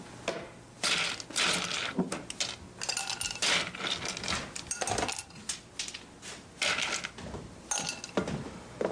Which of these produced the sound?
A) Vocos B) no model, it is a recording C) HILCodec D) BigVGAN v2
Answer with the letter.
B